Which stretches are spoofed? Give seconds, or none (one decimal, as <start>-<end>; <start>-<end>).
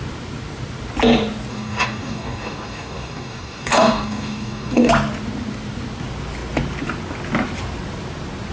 1.5-4.9